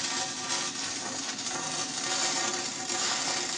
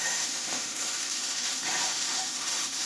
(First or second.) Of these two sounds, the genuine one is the first